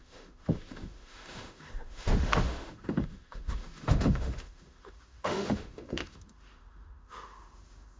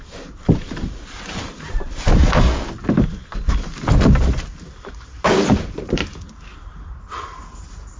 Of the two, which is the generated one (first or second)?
first